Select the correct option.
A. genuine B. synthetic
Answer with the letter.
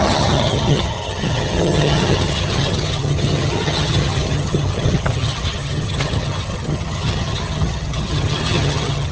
B